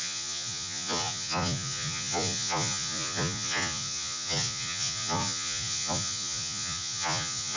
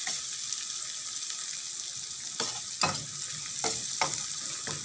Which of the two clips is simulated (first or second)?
first